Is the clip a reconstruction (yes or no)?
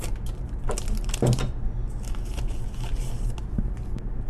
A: no